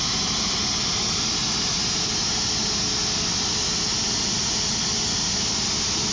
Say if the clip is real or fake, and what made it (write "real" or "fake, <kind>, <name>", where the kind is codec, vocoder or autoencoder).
real